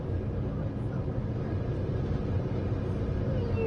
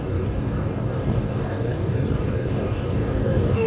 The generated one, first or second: second